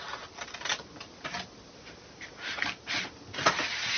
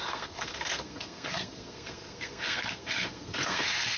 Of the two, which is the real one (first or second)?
first